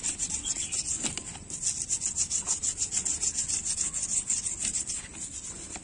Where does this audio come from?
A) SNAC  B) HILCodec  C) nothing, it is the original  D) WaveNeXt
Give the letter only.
C